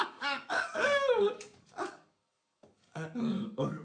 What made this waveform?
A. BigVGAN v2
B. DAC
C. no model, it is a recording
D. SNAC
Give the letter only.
B